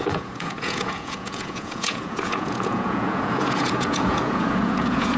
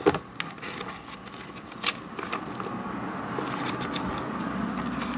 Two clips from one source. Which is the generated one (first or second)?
first